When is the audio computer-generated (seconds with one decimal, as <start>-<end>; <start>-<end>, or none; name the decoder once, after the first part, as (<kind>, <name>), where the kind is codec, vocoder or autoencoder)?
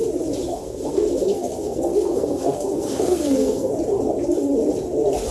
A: 0.5-3.7 (codec, SNAC)